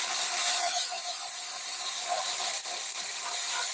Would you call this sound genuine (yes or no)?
no